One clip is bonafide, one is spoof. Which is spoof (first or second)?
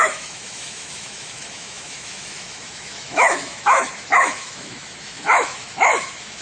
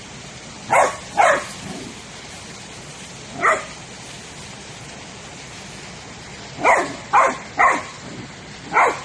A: first